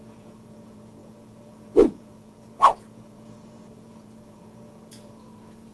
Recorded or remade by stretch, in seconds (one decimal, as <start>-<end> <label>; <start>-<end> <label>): 0.0-5.7 remade